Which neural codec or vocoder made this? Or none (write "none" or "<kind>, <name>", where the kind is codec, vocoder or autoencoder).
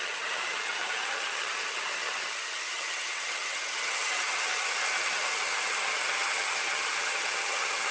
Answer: vocoder, HiFi-GAN